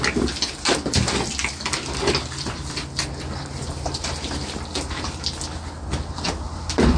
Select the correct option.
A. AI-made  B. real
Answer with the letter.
B